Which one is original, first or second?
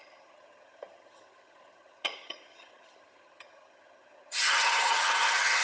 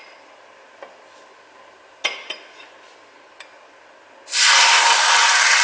second